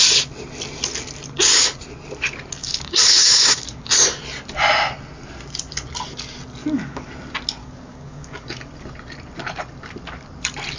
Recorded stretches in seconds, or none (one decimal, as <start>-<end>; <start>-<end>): 0.0-2.6; 3.9-6.6; 7.1-7.6; 8.7-10.8